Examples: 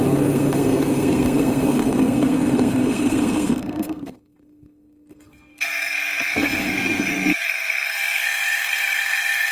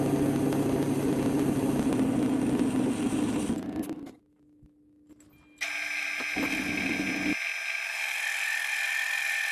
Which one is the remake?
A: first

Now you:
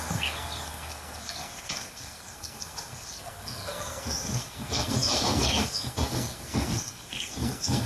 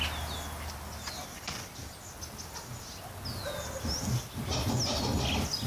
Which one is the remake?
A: first